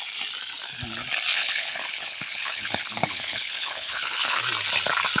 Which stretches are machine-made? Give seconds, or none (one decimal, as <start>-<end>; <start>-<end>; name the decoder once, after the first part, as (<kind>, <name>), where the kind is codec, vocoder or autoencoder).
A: 1.3-4.4 (codec, HILCodec)